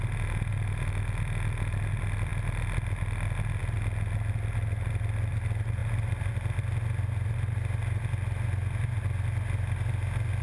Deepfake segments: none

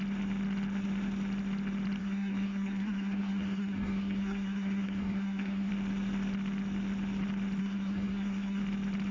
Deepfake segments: 2.0-5.7 (codec, SNAC); 7.6-8.6

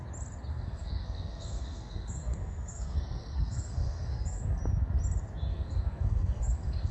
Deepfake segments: 0.5-4.6 (codec, SNAC); 5.5-6.9

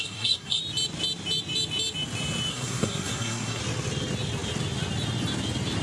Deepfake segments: 0.0-0.6 (codec, SNAC); 2.5-3.6

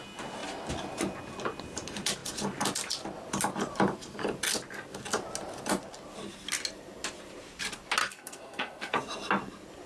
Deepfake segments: 8.0-9.0 (codec, SNAC)

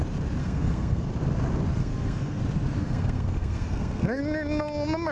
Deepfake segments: 0.4-1.1 (codec, SNAC); 1.8-2.4; 2.8-4.2

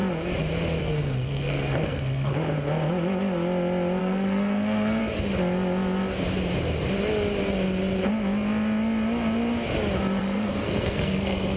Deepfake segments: 0.8-2.3 (codec, SNAC); 4.0-5.0; 10.2-11.6